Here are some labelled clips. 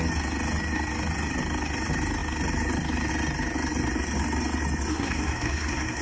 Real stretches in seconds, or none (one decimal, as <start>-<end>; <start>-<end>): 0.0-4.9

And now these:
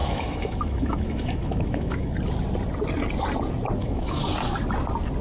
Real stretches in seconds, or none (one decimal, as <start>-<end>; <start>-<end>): 2.1-3.8; 4.3-5.2

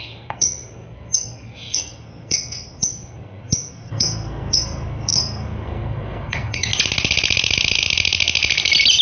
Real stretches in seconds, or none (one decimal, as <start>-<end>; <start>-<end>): 6.7-9.0

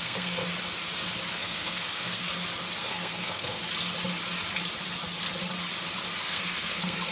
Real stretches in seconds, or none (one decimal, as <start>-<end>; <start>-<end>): 0.4-1.3; 2.3-2.8; 3.6-6.3

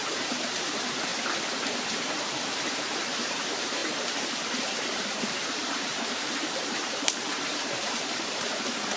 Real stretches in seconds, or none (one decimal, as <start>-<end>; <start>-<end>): 1.1-1.8

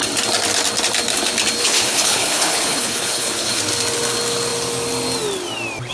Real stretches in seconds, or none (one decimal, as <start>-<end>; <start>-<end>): 0.0-1.6; 3.6-5.9

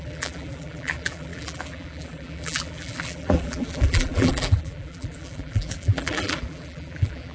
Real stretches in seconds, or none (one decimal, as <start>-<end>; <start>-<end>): none